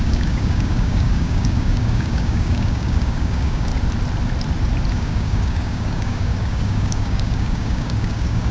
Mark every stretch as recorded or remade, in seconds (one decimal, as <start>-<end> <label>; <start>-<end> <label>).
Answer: 0.0-3.7 remade; 3.7-4.9 recorded; 4.9-8.5 remade